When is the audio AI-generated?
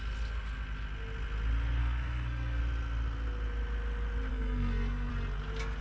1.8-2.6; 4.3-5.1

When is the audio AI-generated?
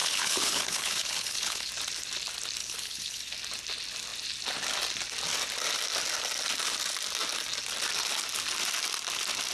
0.0-1.7; 2.6-3.3